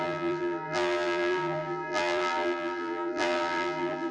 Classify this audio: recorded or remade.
remade